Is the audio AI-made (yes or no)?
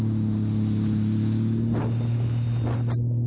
no